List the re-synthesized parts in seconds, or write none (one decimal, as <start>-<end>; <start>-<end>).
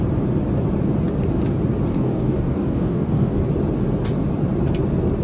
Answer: 1.9-3.4